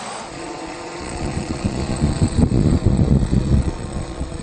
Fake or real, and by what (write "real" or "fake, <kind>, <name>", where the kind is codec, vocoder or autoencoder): fake, vocoder, Vocos